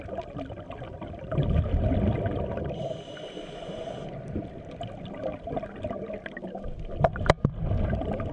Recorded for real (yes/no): yes